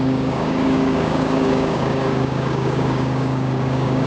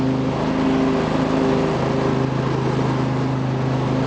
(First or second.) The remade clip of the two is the first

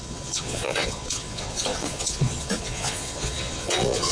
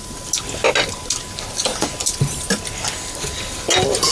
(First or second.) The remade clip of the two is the first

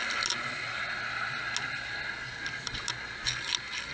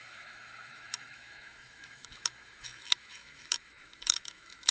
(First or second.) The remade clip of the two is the second